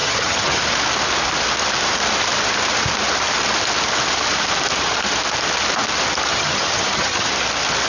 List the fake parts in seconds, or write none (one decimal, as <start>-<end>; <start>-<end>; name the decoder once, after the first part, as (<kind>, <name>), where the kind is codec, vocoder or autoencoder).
0.0-0.6 (vocoder, HiFi-GAN); 6.3-7.3